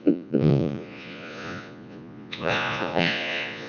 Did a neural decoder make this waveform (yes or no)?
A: yes